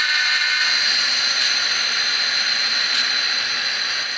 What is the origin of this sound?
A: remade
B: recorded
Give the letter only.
B